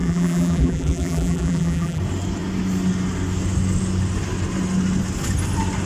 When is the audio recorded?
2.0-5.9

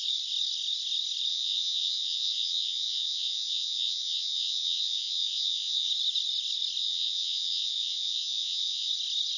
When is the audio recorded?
0.0-1.3; 5.9-6.8; 8.9-9.4

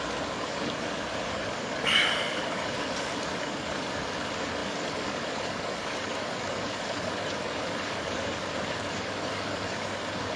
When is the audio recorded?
none

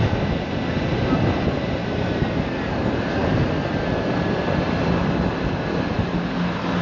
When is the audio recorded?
0.0-6.8